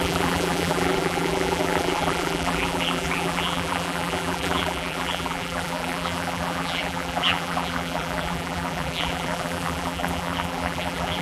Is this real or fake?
fake